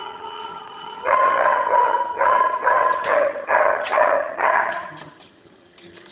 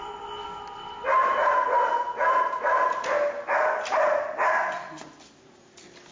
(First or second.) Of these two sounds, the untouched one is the second